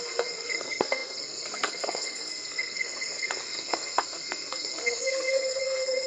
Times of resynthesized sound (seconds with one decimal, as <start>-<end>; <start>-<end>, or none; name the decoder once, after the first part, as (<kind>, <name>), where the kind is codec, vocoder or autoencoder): 0.0-6.1 (codec, SNAC)